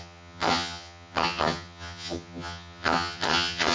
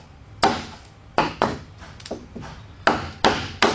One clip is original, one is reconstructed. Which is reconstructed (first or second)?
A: first